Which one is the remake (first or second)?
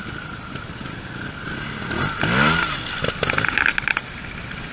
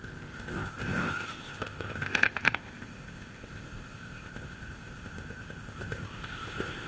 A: second